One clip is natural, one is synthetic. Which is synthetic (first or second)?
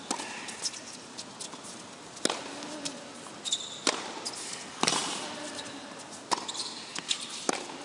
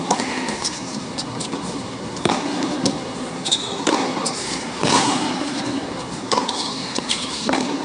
second